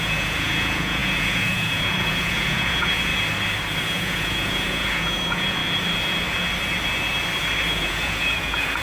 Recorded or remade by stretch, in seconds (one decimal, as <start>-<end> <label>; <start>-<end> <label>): 0.0-3.1 remade; 3.1-3.8 recorded; 3.8-5.6 remade; 5.6-7.7 recorded; 7.7-8.8 remade